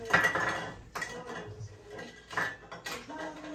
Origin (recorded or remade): recorded